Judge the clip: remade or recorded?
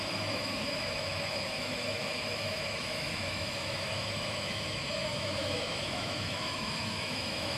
remade